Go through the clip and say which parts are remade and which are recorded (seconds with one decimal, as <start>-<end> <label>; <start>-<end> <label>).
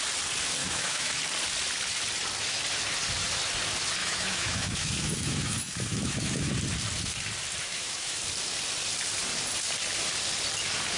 0.0-0.6 recorded; 0.6-1.2 remade; 1.2-4.0 recorded; 4.0-6.5 remade; 6.5-7.6 recorded; 7.6-8.2 remade; 8.2-11.0 recorded